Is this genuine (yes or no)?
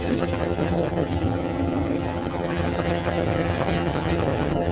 no